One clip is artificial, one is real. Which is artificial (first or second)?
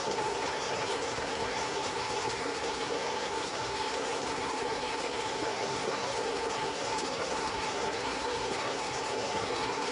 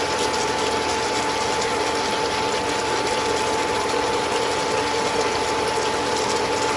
first